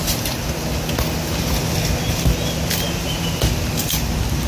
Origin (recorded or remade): recorded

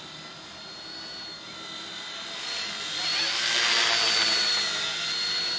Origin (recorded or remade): recorded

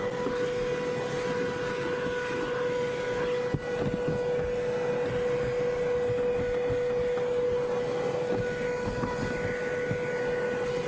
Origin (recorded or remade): recorded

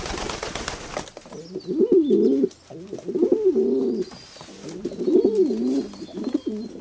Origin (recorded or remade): recorded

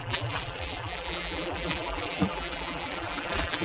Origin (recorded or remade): remade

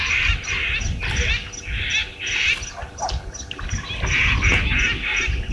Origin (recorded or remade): recorded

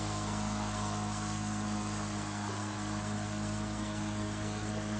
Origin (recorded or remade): remade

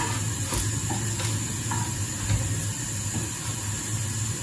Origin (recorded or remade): recorded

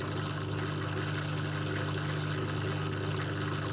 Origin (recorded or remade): recorded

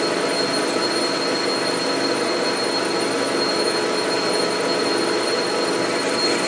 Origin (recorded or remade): recorded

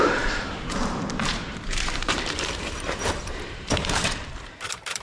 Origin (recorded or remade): remade